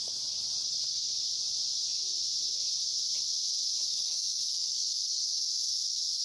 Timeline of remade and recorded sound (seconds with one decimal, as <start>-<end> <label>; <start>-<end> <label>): 0.0-3.9 recorded; 3.9-6.2 remade